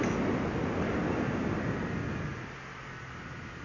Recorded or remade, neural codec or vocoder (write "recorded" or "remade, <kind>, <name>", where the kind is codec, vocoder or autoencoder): recorded